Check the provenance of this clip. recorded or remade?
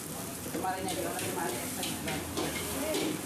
remade